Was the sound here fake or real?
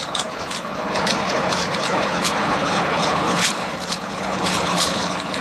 fake